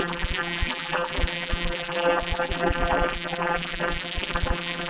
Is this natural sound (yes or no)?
no